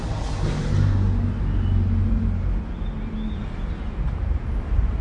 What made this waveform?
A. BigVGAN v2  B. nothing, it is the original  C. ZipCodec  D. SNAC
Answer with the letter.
B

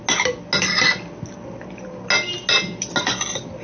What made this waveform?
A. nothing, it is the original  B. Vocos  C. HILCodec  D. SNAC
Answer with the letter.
A